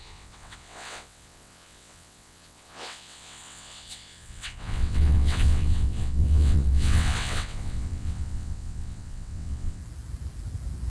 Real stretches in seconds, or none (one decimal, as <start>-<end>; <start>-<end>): 9.8-10.9